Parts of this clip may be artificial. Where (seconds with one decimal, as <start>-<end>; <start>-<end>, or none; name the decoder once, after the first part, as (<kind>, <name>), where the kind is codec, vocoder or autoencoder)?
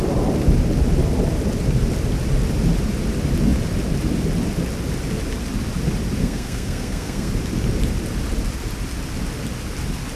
6.2-7.3 (codec, SNAC)